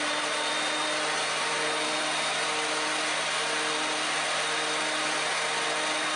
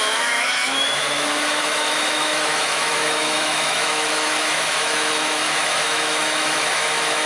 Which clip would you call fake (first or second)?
second